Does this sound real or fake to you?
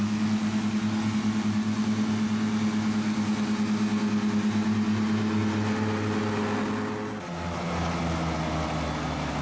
real